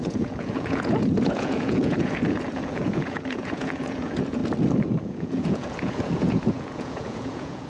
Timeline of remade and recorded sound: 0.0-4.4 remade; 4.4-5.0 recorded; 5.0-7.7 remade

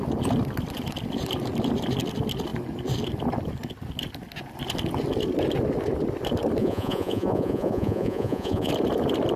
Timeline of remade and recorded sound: 0.0-6.6 recorded; 6.6-8.7 remade; 8.7-9.4 recorded